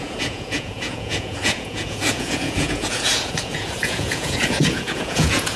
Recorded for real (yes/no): no